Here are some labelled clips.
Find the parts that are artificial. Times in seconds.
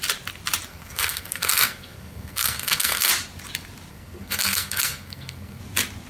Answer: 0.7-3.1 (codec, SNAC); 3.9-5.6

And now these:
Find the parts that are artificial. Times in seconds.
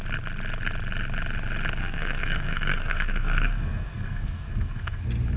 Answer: 1.8-5.0 (codec, SNAC)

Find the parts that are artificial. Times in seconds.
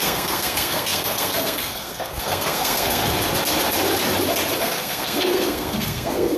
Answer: 0.0-3.0 (codec, SNAC); 4.6-6.4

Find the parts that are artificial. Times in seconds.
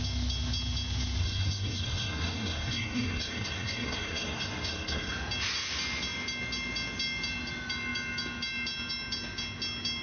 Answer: 1.2-5.1 (codec, SNAC)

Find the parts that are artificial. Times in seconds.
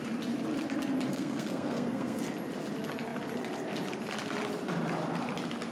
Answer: 1.1-2.2 (codec, SNAC)